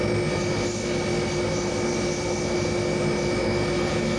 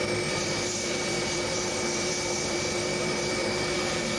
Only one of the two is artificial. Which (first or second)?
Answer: second